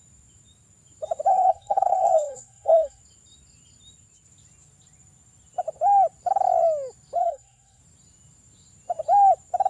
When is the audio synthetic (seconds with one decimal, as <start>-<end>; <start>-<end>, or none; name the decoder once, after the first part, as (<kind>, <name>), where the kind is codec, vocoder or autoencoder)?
1.3-3.0 (codec, SNAC); 7.2-7.8